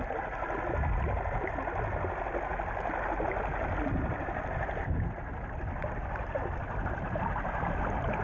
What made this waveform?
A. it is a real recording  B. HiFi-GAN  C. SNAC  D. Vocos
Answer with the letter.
A